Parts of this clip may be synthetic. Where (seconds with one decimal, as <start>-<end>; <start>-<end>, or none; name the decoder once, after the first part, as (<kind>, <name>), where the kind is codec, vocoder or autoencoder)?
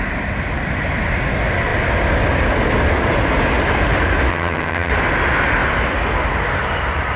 4.3-4.9 (vocoder, HiFi-GAN)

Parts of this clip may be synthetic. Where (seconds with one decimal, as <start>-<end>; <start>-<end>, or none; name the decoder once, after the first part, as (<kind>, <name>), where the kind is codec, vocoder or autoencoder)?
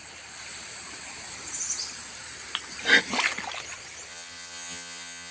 4.1-5.3 (vocoder, HiFi-GAN)